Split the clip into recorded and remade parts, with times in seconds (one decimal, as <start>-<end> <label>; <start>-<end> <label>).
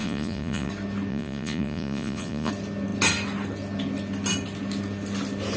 0.0-0.7 remade; 0.7-1.1 recorded; 1.1-2.5 remade; 2.5-5.6 recorded